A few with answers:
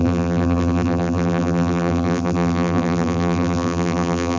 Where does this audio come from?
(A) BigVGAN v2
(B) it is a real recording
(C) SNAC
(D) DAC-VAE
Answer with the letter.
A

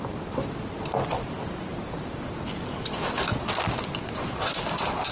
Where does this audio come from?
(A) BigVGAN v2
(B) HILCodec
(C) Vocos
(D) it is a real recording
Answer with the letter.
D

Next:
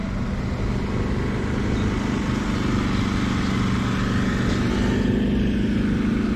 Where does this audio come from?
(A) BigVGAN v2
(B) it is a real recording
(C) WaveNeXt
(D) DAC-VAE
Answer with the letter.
B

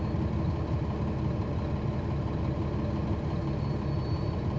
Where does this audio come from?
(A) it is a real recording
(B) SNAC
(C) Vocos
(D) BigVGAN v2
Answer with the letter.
A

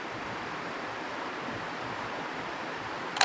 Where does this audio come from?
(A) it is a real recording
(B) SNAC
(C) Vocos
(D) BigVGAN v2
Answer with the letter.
D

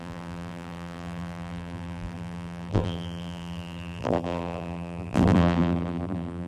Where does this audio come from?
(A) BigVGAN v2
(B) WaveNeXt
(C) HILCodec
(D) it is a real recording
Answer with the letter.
A